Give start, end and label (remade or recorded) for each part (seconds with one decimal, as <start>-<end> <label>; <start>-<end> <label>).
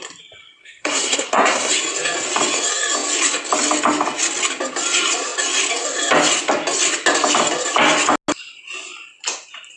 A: 0.0-0.6 recorded; 0.6-1.7 remade; 1.7-9.8 recorded